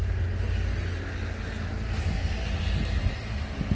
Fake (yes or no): no